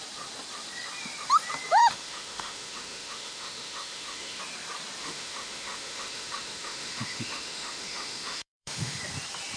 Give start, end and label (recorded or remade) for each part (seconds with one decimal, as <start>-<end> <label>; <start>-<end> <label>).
0.0-1.8 recorded; 1.8-4.4 remade; 4.4-5.0 recorded; 5.0-9.0 remade; 9.0-9.6 recorded